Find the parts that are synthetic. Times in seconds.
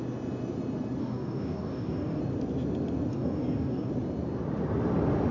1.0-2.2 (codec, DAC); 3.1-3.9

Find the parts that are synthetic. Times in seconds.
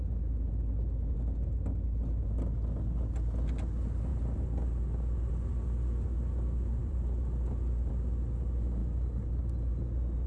6.8-7.9 (vocoder, BigVGAN v2)